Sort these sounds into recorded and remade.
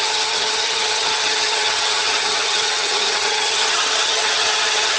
remade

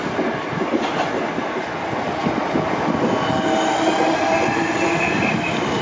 recorded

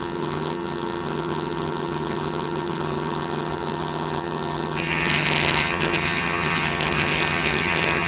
remade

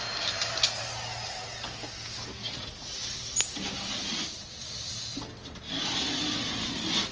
recorded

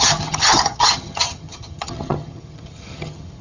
remade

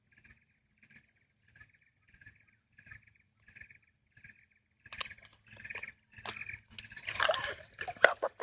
recorded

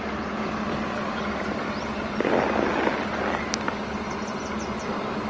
recorded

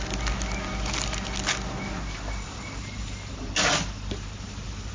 recorded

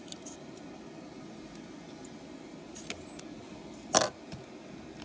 recorded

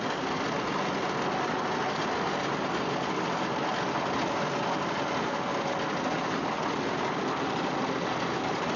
recorded